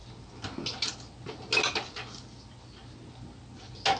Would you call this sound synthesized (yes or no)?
no